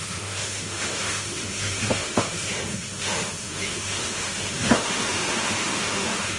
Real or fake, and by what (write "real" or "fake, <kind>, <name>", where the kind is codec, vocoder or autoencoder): fake, autoencoder, DAC-VAE